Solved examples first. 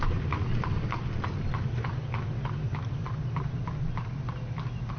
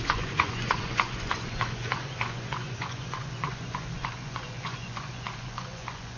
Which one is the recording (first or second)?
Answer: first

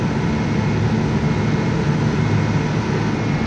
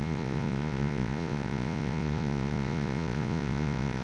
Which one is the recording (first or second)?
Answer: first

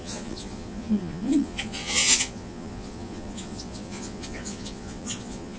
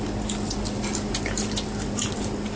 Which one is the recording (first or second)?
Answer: second